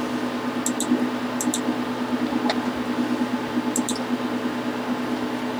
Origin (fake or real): real